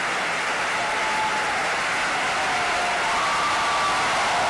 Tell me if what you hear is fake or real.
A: real